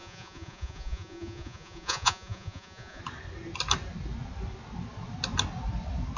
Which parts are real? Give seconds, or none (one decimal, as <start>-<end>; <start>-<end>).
3.0-6.2